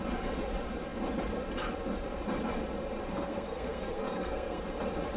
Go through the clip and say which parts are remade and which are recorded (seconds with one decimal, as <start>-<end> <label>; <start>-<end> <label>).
0.0-3.1 recorded; 3.1-4.6 remade; 4.6-5.2 recorded